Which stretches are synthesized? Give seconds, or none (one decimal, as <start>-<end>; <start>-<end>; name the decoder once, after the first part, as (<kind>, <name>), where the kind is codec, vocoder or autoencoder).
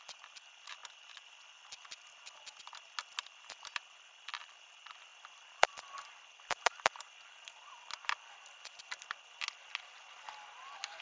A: 5.1-6.9 (vocoder, BigVGAN v2)